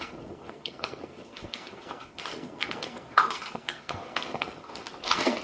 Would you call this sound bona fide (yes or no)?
no